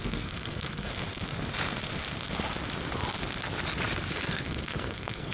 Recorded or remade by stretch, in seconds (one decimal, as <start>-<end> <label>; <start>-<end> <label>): 0.0-0.9 remade; 0.9-4.1 recorded; 4.1-5.3 remade